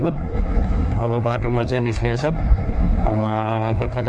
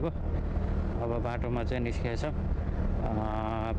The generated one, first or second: first